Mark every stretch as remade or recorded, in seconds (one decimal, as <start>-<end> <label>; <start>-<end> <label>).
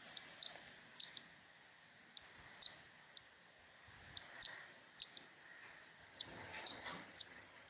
0.0-6.0 recorded; 6.0-7.7 remade